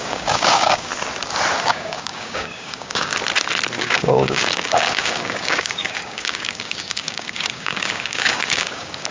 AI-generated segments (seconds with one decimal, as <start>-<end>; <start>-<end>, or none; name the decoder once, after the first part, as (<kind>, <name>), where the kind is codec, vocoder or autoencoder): 0.0-0.9 (codec, DAC); 1.6-3.1; 3.8-9.1